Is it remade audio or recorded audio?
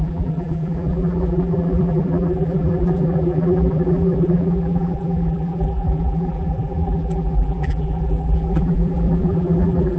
remade